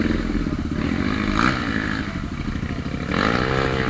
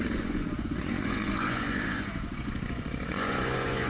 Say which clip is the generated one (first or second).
second